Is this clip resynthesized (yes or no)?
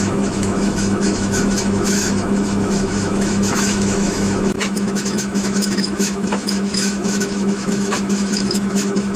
yes